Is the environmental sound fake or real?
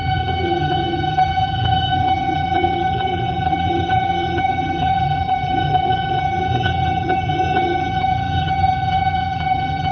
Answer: fake